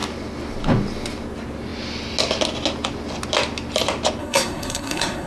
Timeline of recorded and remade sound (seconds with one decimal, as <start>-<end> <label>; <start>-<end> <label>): 0.0-4.2 recorded; 4.2-5.3 remade